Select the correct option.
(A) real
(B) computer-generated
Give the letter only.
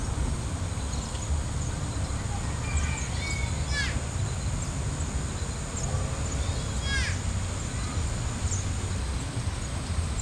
A